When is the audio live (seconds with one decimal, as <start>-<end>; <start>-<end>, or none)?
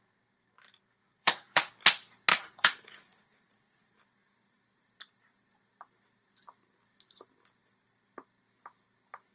0.0-1.0; 1.7-2.3; 4.0-9.3